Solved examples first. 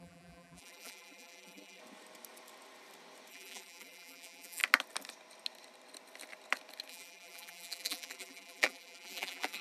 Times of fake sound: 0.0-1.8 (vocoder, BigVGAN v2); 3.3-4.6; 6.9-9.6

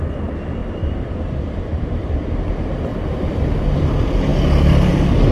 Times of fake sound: 0.6-2.5 (vocoder, BigVGAN v2); 2.9-3.8

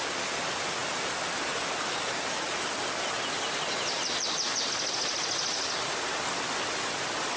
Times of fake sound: none

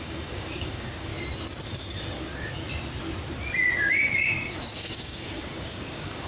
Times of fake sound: 0.0-1.1 (codec, DAC); 3.9-6.3

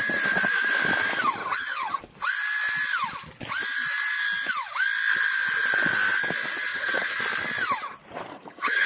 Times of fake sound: 1.4-2.0 (vocoder, HiFi-GAN); 6.7-7.2; 8.3-8.9

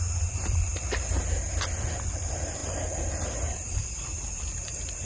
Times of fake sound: 0.0-0.7 (vocoder, BigVGAN v2); 1.9-5.1